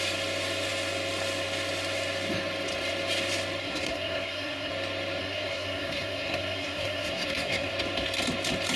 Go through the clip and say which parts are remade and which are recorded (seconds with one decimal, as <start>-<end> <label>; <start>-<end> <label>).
0.0-3.6 recorded; 3.6-4.7 remade; 4.7-5.2 recorded; 5.2-7.7 remade; 7.7-8.8 recorded